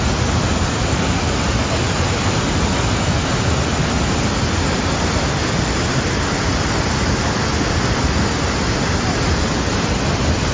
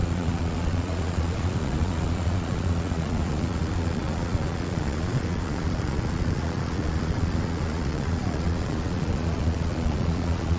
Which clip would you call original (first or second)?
first